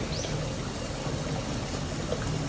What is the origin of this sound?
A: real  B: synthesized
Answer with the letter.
A